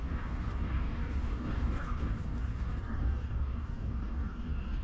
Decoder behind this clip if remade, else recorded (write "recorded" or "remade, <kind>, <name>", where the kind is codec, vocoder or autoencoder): remade, codec, DAC